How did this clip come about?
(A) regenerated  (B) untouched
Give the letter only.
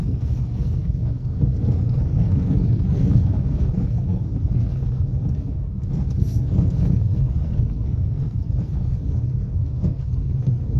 A